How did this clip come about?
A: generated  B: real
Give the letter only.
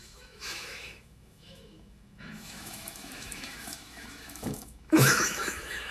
A